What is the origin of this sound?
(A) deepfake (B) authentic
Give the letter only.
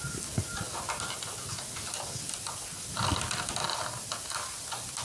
B